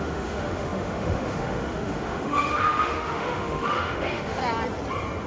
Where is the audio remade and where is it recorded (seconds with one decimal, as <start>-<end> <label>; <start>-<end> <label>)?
0.0-4.4 remade; 4.4-5.3 recorded